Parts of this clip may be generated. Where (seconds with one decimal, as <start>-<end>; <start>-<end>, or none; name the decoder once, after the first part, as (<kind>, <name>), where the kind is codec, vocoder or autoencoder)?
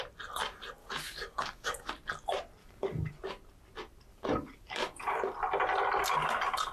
0.8-1.9 (codec, DAC); 2.6-3.1; 4.1-5.2